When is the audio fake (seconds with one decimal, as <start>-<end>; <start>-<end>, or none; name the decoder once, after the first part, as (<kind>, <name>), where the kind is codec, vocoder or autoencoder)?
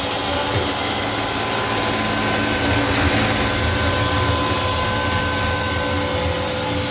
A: none